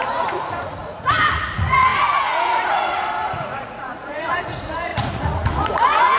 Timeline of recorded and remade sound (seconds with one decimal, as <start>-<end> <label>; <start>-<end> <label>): 0.0-6.2 remade